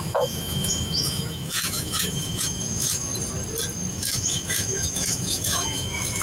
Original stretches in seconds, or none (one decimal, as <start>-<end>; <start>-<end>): 3.1-3.9